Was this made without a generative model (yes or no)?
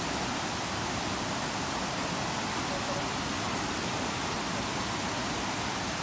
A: yes